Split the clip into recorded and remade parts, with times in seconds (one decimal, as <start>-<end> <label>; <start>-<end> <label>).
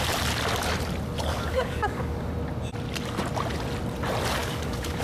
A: 0.0-1.3 recorded; 1.3-2.3 remade; 2.3-4.4 recorded; 4.4-5.0 remade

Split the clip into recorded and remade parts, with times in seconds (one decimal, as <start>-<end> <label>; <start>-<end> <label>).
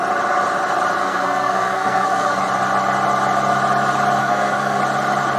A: 0.0-1.0 recorded; 1.0-2.4 remade; 2.4-4.2 recorded; 4.2-4.8 remade; 4.8-5.4 recorded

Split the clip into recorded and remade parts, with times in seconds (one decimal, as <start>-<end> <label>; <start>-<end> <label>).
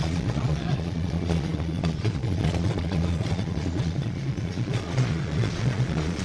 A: 0.0-6.2 remade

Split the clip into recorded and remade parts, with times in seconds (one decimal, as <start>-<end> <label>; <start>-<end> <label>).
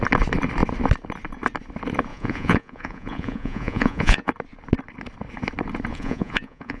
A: 0.0-2.1 recorded; 2.1-4.3 remade; 4.3-5.9 recorded; 5.9-6.8 remade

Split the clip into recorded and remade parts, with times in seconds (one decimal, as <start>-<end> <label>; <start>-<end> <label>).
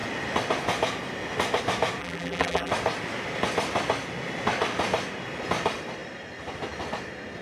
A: 0.0-2.0 recorded; 2.0-2.7 remade; 2.7-7.4 recorded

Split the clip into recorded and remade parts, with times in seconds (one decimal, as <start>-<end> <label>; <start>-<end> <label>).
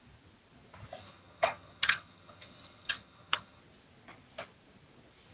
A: 0.0-1.0 recorded; 1.0-3.6 remade; 3.6-5.3 recorded